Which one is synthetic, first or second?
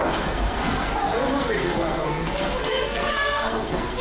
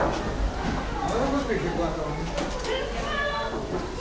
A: first